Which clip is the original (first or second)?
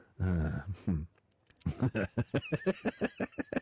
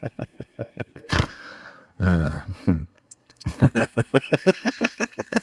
first